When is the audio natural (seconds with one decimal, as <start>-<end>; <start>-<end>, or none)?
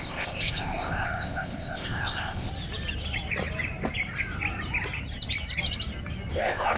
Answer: 2.5-6.3